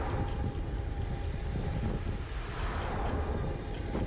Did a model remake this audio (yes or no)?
no